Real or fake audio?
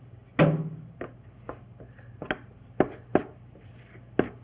real